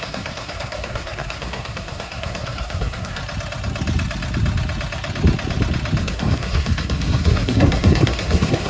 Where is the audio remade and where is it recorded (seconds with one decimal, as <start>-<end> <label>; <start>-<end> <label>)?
0.0-3.2 remade; 3.2-6.0 recorded; 6.0-8.7 remade